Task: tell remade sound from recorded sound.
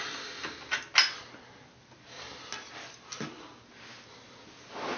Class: recorded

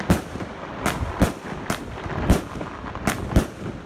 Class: recorded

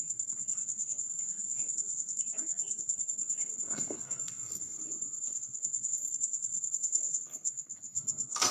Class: remade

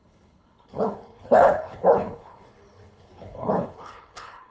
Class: remade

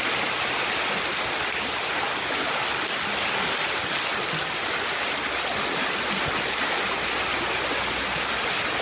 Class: recorded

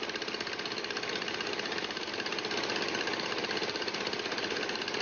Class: recorded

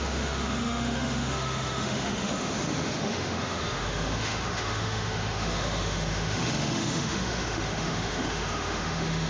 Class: remade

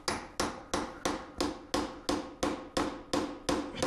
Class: recorded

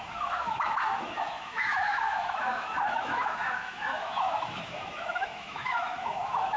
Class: remade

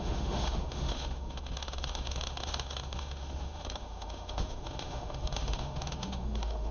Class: remade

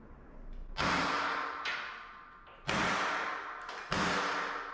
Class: recorded